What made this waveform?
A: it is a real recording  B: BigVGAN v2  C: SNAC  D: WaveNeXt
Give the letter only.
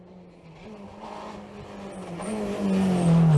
A